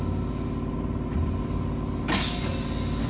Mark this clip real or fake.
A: real